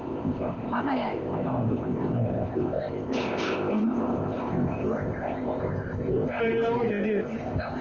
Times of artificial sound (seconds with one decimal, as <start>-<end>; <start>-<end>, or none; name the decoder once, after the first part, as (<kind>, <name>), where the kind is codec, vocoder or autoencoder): 0.0-6.4 (codec, ZipCodec); 6.9-7.8